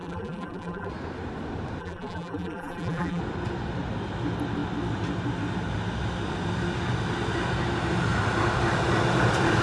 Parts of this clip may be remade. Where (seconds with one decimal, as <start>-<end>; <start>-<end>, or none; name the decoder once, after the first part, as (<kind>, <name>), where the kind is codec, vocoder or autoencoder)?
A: 0.0-0.9 (vocoder, BigVGAN v2); 1.8-3.2